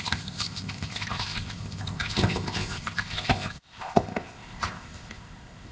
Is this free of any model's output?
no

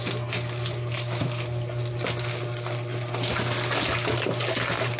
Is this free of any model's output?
yes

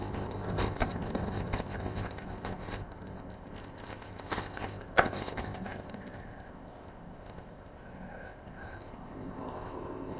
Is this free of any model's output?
no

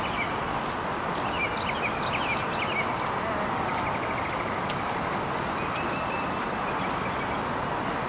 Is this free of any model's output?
yes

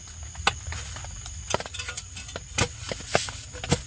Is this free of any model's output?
yes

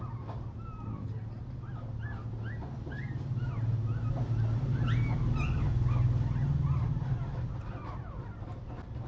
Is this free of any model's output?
yes